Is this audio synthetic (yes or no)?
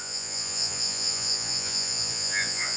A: yes